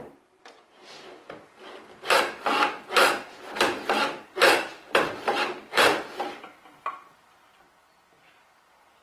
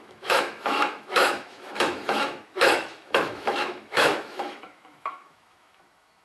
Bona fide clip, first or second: first